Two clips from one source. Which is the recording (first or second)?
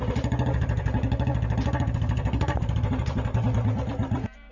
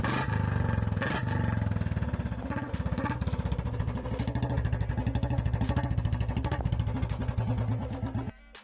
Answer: second